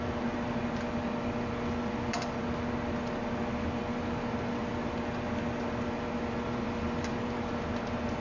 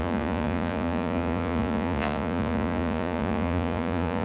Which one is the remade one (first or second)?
second